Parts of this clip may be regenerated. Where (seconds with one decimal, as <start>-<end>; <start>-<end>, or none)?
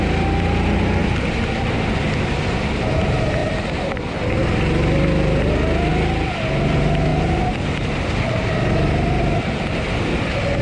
none